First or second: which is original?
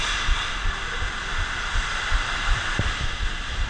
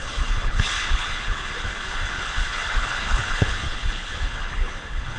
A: first